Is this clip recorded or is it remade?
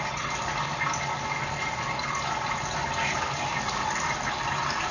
recorded